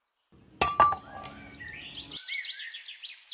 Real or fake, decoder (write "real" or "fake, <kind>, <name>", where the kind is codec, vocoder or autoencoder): real